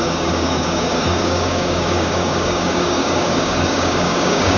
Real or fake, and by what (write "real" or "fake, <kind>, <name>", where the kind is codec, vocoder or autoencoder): fake, codec, DAC